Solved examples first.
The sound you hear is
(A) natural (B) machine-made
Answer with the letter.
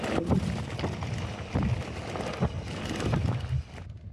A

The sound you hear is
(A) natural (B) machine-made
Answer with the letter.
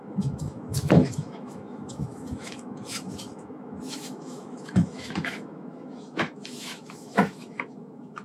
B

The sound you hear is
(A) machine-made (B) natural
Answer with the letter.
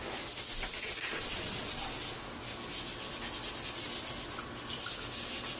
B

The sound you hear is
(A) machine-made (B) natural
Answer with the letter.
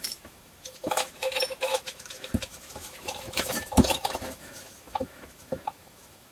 A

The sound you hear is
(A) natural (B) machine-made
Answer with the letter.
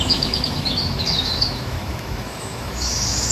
B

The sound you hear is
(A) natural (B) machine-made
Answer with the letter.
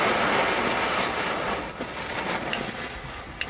A